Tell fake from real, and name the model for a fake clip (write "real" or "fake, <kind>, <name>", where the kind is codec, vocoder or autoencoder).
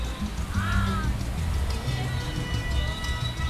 real